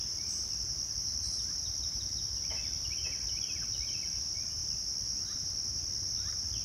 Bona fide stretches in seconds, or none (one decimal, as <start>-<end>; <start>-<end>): 0.0-6.6